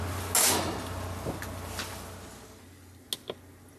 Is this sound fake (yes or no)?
no